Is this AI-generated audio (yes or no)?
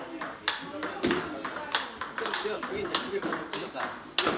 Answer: no